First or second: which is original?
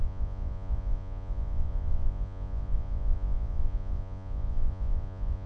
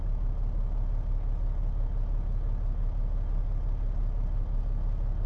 second